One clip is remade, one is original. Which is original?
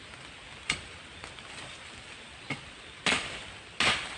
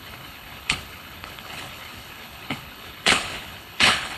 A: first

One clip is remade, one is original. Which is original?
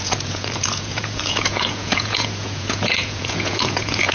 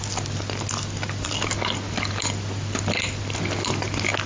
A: second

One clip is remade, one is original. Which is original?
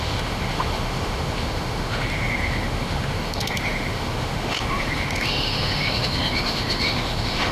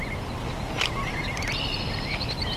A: second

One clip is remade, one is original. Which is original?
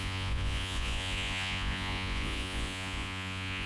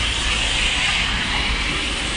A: second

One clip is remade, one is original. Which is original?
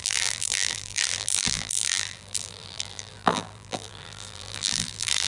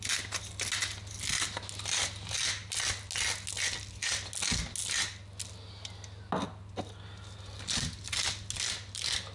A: second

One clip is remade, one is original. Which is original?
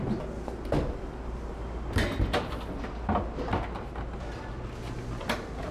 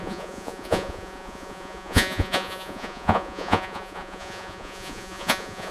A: first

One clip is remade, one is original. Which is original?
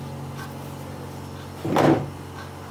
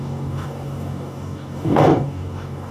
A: first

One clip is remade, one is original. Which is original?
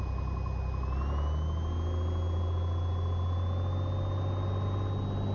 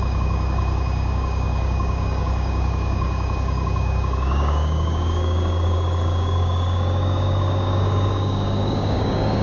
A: first